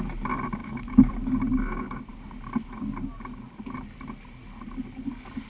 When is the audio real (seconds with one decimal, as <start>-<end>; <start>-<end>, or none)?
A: 0.0-0.6; 1.1-5.5